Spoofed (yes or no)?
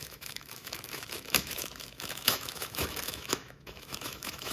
yes